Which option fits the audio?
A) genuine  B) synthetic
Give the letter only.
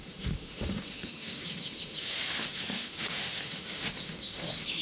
B